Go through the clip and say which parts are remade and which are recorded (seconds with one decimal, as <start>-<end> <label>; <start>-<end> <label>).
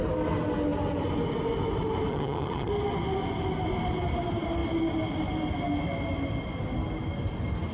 0.0-2.1 recorded; 2.1-2.7 remade; 2.7-7.7 recorded